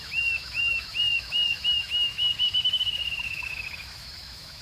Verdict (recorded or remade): remade